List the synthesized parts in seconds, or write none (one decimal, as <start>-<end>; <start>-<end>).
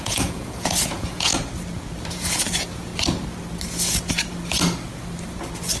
0.0-1.3; 2.1-2.9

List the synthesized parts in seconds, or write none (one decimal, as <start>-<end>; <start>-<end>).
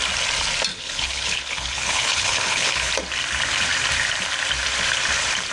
0.7-2.9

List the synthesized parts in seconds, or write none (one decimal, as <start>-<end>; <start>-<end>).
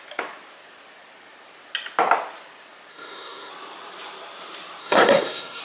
2.9-3.5; 4.8-5.6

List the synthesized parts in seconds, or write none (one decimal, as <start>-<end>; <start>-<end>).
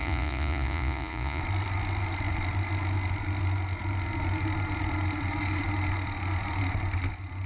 0.0-1.4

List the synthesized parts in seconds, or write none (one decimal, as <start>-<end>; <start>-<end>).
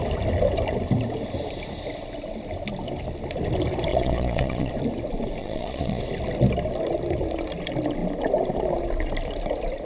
3.9-4.7; 5.4-6.0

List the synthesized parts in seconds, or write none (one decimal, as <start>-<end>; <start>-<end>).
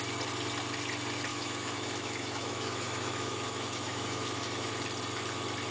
1.3-4.7